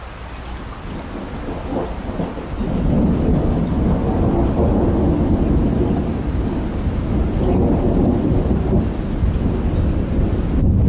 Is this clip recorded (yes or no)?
yes